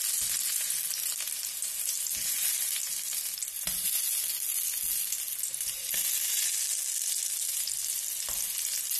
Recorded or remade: recorded